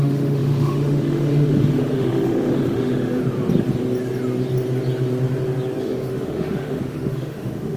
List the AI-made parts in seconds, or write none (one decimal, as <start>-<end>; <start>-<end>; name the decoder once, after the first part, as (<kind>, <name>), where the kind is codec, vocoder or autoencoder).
0.0-3.2 (autoencoder, DAC-VAE); 5.8-7.8